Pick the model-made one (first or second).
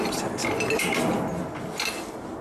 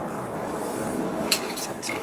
second